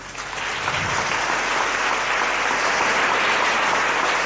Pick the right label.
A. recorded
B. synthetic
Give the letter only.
A